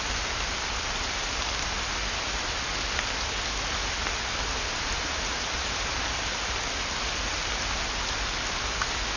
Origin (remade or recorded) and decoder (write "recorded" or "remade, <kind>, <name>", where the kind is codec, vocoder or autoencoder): recorded